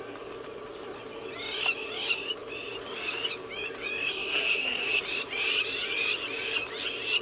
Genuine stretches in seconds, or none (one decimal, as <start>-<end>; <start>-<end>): 0.0-4.1; 5.0-7.2